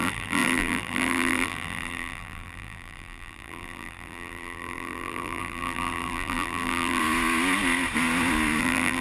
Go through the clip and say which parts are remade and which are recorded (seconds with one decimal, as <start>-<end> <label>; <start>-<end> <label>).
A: 0.0-7.0 remade; 7.0-8.6 recorded; 8.6-9.0 remade